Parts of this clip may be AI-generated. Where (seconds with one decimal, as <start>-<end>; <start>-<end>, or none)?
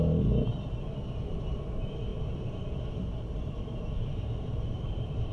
2.1-5.3